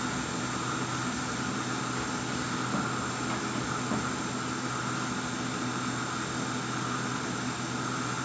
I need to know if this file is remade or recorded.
recorded